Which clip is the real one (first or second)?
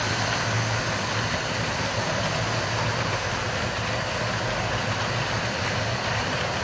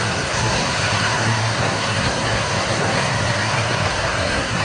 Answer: first